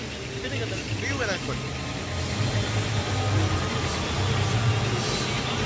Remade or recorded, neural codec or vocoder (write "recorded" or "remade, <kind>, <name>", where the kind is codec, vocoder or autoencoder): recorded